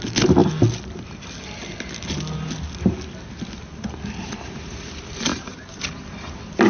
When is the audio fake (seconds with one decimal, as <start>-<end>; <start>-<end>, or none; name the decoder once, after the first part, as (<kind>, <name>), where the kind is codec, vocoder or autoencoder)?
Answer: none